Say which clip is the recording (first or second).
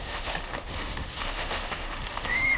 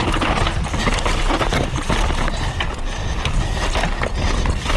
second